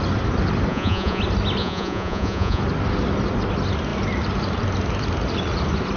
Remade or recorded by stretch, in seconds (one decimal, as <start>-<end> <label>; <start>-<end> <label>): 0.0-0.7 recorded; 0.7-1.2 remade; 1.2-1.6 recorded; 1.6-2.6 remade; 2.6-6.0 recorded